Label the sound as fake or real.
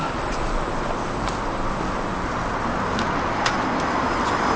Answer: real